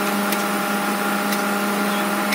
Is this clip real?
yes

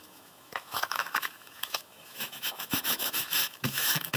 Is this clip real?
no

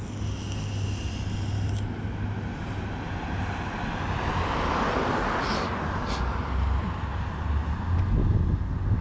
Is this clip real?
yes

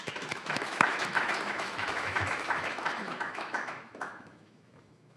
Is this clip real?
no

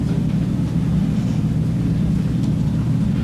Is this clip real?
yes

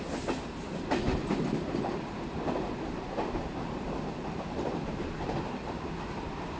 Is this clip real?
yes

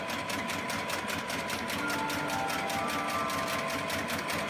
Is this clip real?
yes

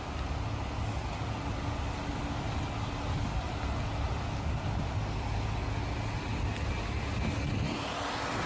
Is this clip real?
yes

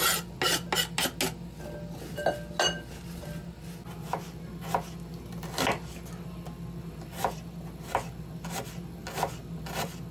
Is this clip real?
yes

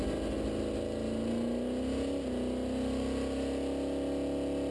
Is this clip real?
yes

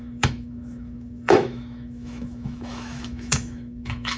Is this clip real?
no